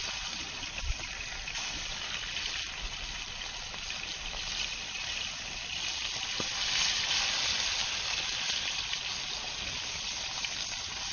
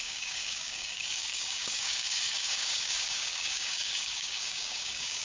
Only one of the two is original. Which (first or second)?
first